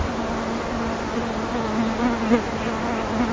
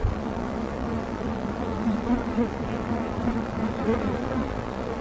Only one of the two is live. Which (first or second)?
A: first